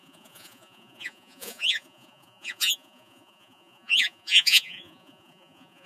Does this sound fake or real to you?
fake